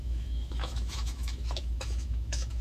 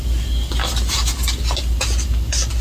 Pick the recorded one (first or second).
second